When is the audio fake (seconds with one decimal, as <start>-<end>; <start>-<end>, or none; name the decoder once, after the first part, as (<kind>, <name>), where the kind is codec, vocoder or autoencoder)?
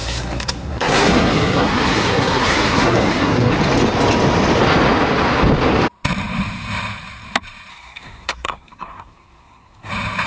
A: 0.0-3.5 (codec, SNAC); 7.7-9.9